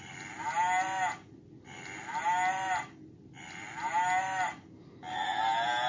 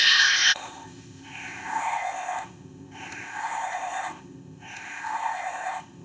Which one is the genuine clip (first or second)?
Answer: first